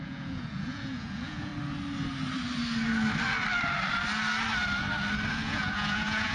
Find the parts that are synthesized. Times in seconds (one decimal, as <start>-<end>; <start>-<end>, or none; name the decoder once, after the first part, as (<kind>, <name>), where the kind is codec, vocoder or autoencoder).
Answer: 0.0-1.5 (vocoder, Vocos); 5.3-6.3